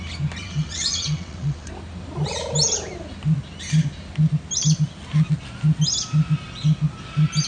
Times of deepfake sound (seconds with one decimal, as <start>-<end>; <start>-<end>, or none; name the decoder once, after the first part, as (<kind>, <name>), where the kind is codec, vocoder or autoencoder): 0.4-1.7 (vocoder, WaveNeXt)